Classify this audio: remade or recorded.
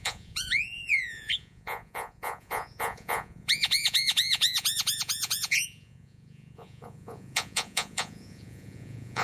remade